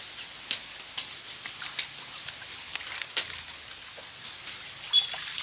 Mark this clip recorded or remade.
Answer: recorded